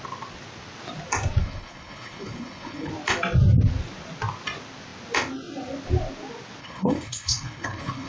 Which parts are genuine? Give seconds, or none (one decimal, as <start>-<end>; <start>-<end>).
0.0-1.4; 2.9-6.6